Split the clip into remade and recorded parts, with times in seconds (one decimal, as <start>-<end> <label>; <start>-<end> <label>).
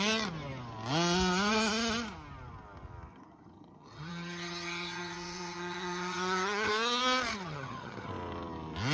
0.0-3.1 recorded; 3.1-6.7 remade; 6.7-7.3 recorded; 7.3-8.1 remade; 8.1-8.9 recorded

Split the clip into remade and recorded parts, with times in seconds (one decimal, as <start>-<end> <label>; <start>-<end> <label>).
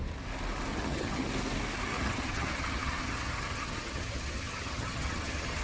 0.0-0.7 recorded; 0.7-1.3 remade; 1.3-1.9 recorded; 1.9-5.6 remade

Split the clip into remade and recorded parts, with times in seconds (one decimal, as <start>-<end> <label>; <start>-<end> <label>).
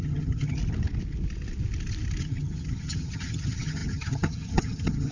0.0-0.6 remade; 0.6-2.2 recorded; 2.2-5.1 remade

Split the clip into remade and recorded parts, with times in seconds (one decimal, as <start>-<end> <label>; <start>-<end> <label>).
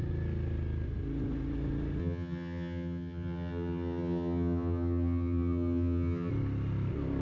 0.0-2.0 recorded; 2.0-6.3 remade; 6.3-7.2 recorded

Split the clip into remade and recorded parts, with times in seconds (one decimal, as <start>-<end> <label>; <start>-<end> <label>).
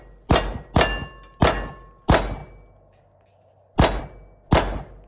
0.0-5.1 recorded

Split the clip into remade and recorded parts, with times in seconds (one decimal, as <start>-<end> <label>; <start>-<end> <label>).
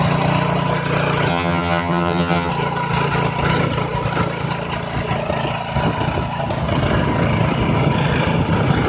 0.0-1.3 recorded; 1.3-2.5 remade; 2.5-8.9 recorded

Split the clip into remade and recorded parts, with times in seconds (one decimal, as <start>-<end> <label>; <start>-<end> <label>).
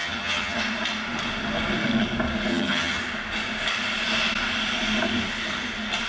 0.0-0.6 remade; 0.6-2.5 recorded; 2.5-3.0 remade; 3.0-6.1 recorded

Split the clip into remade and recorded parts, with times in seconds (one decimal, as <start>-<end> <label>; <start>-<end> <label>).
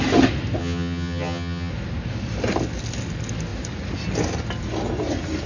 0.0-0.6 recorded; 0.6-1.7 remade; 1.7-5.5 recorded